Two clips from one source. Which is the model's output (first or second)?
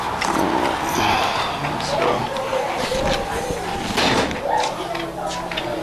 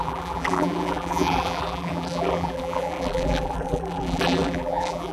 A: second